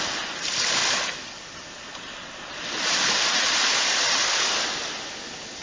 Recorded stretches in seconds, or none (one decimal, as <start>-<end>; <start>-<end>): 0.0-5.6